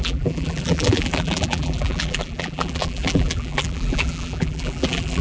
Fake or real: fake